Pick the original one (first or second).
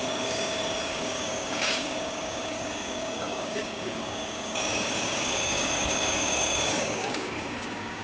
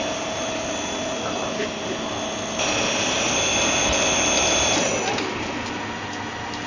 second